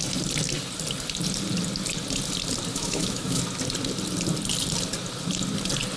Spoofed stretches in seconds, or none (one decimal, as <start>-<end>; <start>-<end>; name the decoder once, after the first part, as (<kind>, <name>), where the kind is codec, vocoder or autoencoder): 2.7-3.4 (autoencoder, DAC-VAE)